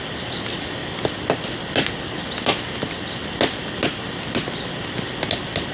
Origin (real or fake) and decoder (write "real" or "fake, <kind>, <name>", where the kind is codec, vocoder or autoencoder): real